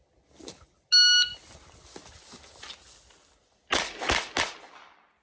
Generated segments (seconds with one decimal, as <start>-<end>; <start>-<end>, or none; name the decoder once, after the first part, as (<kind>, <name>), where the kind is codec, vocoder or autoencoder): none